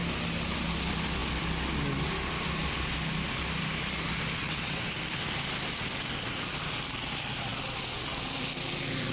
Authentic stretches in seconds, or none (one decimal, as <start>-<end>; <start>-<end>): 0.0-4.4; 4.9-9.1